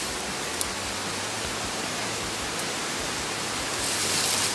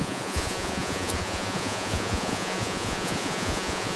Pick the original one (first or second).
first